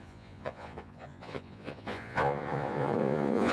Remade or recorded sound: remade